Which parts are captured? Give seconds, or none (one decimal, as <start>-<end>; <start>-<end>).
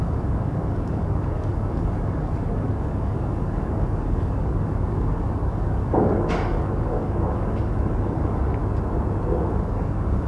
8.6-9.5